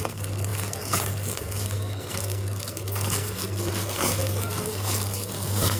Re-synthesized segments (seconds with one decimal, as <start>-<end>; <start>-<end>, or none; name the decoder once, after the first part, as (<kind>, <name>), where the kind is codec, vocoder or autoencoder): 0.0-5.8 (codec, SNAC)